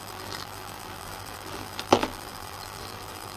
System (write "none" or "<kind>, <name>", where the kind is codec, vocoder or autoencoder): vocoder, BigVGAN v2